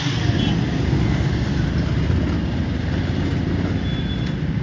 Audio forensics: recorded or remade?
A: recorded